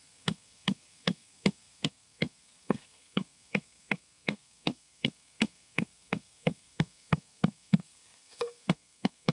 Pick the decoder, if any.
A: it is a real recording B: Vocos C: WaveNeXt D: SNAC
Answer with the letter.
D